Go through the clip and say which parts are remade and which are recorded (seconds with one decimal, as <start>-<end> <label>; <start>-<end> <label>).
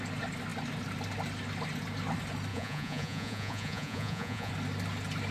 0.0-2.5 recorded; 2.5-4.5 remade; 4.5-5.3 recorded